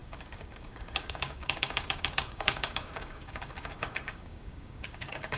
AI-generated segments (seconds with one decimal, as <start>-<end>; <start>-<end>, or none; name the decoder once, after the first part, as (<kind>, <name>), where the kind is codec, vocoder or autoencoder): 0.0-5.4 (codec, DAC)